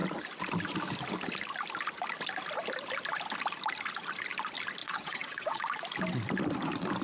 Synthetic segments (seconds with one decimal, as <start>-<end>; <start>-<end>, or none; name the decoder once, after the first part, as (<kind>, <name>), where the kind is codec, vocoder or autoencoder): 4.8-5.6 (vocoder, WaveNeXt)